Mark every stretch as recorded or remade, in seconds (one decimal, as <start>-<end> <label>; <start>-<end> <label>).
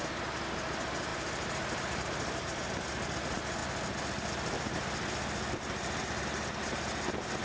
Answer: 0.0-1.1 recorded; 1.1-2.7 remade; 2.7-3.6 recorded; 3.6-6.2 remade; 6.2-7.4 recorded